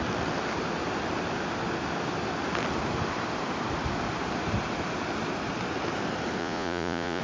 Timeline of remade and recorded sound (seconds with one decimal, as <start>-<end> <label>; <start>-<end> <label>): 0.0-6.4 recorded; 6.4-7.2 remade